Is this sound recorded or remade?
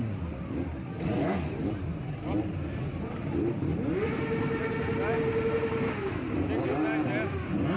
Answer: recorded